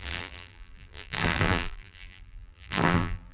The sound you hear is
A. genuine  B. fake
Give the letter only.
B